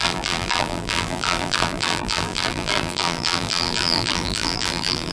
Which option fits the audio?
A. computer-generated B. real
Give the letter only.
A